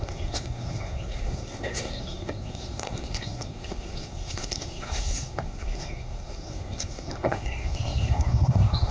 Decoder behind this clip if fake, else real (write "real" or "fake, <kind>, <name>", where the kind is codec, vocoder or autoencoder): fake, codec, SNAC